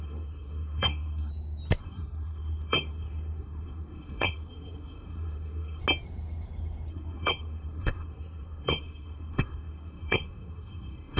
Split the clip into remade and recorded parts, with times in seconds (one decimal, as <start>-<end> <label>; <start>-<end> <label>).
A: 0.0-1.3 remade; 1.3-1.8 recorded; 1.8-5.8 remade; 5.8-6.9 recorded; 6.9-11.2 remade